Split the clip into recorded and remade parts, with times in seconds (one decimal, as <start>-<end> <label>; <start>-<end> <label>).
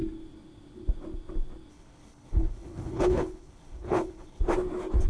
0.0-1.7 recorded; 1.7-4.4 remade; 4.4-5.1 recorded